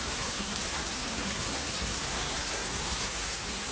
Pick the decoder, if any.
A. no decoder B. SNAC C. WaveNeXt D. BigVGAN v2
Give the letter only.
B